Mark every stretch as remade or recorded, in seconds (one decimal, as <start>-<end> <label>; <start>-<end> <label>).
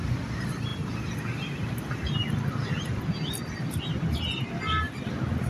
0.0-5.5 recorded